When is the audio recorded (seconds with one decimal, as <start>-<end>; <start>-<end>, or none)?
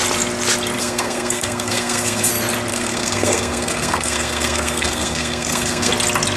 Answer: 0.0-0.8; 2.3-2.7; 5.9-6.4